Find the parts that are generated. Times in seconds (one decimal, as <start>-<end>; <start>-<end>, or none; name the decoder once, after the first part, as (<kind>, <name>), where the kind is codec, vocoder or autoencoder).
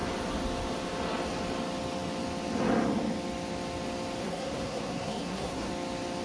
4.2-5.7 (codec, SNAC)